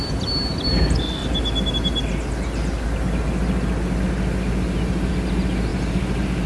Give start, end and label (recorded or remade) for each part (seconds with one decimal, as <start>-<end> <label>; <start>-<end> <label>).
0.0-5.7 recorded; 5.7-6.5 remade